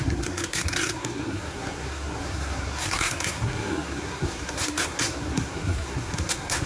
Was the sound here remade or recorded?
remade